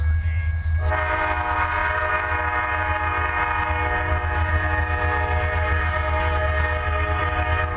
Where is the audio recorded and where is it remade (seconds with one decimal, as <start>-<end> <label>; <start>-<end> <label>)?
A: 0.0-7.8 recorded